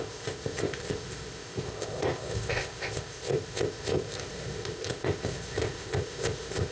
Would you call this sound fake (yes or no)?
yes